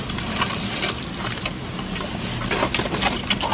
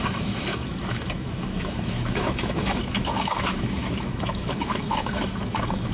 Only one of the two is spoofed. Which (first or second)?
second